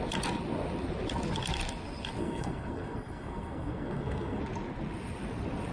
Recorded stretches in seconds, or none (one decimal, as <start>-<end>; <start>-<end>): 0.0-2.2; 4.4-5.7